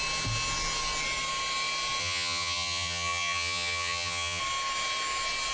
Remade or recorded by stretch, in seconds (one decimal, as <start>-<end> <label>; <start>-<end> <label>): 0.0-2.0 recorded; 2.0-4.4 remade; 4.4-5.5 recorded